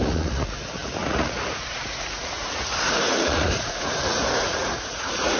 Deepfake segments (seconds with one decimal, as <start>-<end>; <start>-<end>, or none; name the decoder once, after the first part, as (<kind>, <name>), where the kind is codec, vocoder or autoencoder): 0.0-5.4 (vocoder, Vocos)